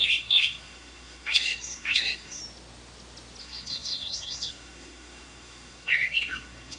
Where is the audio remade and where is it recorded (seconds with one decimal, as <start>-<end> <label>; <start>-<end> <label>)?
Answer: 0.0-2.4 remade; 2.4-3.4 recorded; 3.4-6.8 remade